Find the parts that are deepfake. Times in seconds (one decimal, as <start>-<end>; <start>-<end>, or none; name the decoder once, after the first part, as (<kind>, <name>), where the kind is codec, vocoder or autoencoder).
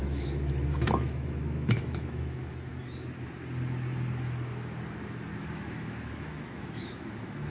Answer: 0.0-2.7 (autoencoder, DAC-VAE); 5.4-7.5